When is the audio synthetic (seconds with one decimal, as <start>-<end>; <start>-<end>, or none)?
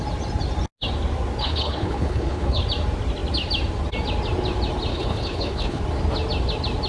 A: 1.4-2.6; 4.9-5.8